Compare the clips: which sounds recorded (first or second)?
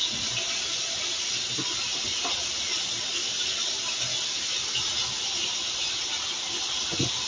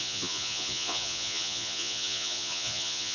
first